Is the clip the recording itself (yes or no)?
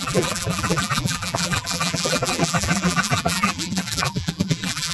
no